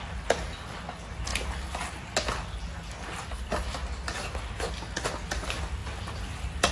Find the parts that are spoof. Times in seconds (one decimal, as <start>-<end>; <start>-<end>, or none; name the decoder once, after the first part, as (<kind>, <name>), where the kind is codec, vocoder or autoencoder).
none